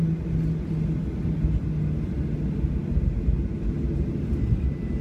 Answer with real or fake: real